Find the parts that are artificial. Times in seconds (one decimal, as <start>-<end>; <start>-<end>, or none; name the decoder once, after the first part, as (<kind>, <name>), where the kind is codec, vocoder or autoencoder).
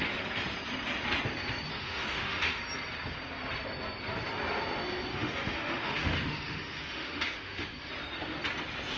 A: 1.7-2.6 (autoencoder, DAC-VAE); 5.1-7.9